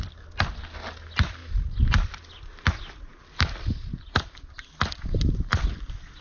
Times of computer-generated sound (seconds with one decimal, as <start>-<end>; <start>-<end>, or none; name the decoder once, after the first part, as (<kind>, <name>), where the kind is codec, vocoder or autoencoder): none